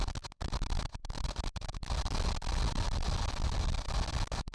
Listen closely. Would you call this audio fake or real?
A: real